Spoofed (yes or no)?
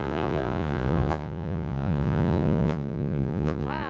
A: yes